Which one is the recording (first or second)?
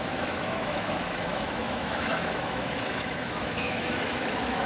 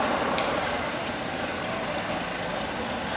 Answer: second